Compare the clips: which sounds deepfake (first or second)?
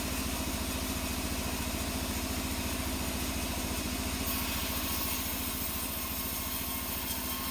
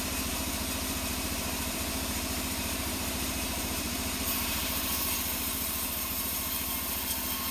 second